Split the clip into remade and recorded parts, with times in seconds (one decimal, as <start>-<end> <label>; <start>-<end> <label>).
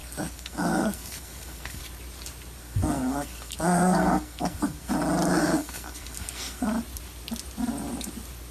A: 0.0-1.8 remade; 1.8-2.6 recorded; 2.6-4.9 remade; 4.9-5.4 recorded; 5.4-6.7 remade; 6.7-8.5 recorded